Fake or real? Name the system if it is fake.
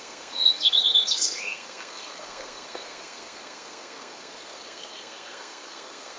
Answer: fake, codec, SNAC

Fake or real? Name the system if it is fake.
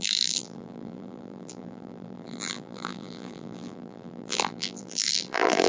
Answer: fake, vocoder, BigVGAN v2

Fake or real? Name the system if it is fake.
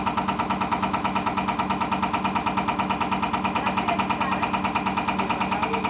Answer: real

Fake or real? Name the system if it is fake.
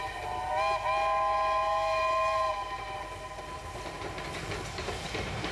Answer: real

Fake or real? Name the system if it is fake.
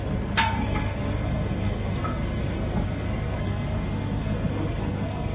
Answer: fake, codec, SNAC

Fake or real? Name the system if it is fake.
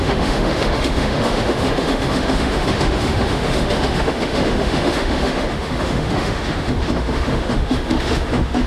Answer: fake, autoencoder, DAC-VAE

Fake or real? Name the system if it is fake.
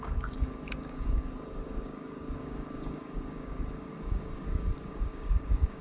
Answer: fake, codec, DAC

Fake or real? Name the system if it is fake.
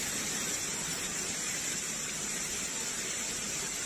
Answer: real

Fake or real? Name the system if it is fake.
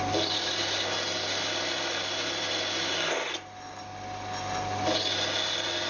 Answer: real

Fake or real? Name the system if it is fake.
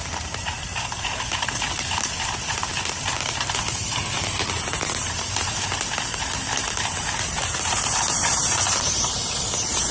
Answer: fake, vocoder, BigVGAN v2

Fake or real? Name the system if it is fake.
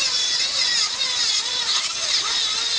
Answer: fake, vocoder, Vocos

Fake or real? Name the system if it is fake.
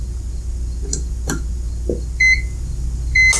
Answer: real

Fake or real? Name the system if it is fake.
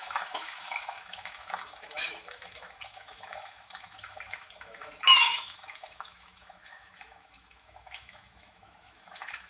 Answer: fake, autoencoder, DAC-VAE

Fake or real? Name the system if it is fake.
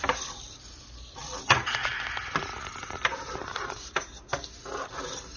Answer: fake, vocoder, BigVGAN v2